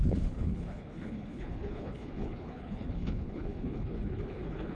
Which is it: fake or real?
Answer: fake